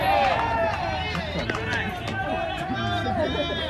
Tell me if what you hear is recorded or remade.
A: recorded